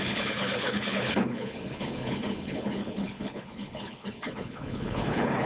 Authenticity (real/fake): fake